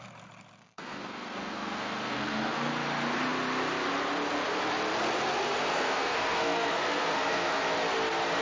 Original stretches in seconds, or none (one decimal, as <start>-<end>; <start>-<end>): 0.0-0.6; 2.7-5.7; 7.6-8.4